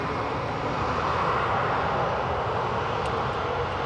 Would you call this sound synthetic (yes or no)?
no